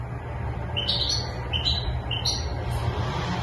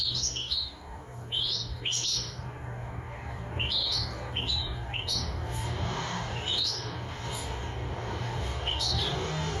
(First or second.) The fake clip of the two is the second